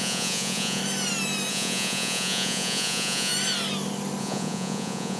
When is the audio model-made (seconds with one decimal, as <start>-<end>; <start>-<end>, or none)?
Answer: 0.0-0.8; 1.5-3.3; 4.2-5.2